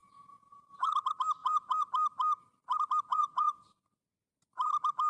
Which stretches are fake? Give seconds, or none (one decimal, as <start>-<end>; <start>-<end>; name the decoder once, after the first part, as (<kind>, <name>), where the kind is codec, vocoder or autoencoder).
0.0-0.9 (vocoder, Vocos); 1.4-1.9; 3.1-3.8